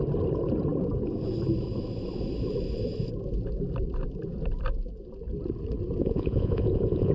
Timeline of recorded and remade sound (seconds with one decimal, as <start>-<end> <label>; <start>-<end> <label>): 0.0-6.0 recorded; 6.0-7.1 remade